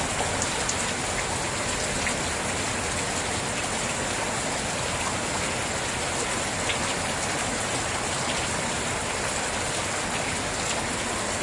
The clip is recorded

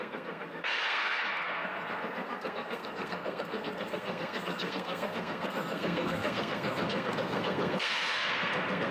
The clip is remade